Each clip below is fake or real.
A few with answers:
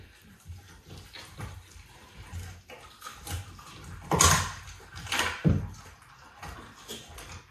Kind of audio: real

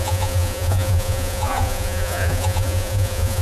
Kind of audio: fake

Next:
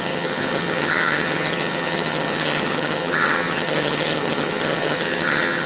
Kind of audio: fake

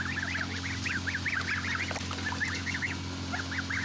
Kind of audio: real